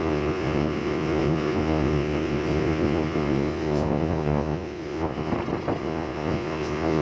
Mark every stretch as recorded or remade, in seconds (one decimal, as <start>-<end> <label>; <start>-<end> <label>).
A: 0.0-5.3 remade; 5.3-5.8 recorded; 5.8-7.0 remade